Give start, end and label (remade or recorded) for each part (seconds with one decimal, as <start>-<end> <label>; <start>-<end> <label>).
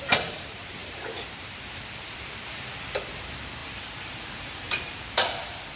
0.0-5.8 remade